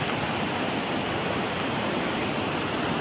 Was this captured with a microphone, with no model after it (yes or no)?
yes